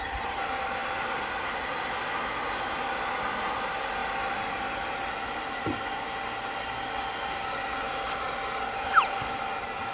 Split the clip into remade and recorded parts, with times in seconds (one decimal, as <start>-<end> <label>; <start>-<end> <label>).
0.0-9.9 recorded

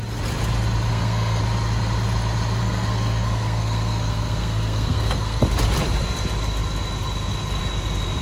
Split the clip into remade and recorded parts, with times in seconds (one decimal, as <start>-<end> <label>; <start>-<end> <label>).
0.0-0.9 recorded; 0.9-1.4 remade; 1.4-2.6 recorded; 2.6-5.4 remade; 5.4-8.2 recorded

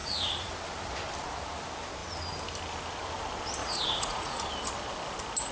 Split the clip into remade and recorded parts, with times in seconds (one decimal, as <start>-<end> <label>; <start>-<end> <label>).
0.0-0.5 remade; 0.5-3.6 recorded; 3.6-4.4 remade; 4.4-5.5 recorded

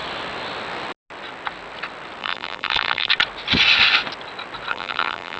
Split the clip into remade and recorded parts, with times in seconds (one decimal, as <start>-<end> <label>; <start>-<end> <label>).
0.0-2.2 recorded; 2.2-3.1 remade; 3.1-4.7 recorded; 4.7-5.4 remade